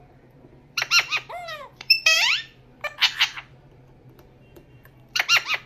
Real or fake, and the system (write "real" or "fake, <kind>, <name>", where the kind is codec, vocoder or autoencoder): fake, vocoder, BigVGAN v2